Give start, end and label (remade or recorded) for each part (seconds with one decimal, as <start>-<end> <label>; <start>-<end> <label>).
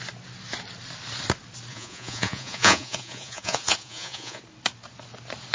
0.0-1.7 recorded; 1.7-4.4 remade; 4.4-5.5 recorded